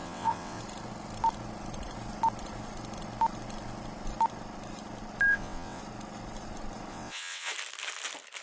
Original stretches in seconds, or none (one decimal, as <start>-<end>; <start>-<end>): 0.6-5.3; 5.8-6.9; 7.5-8.4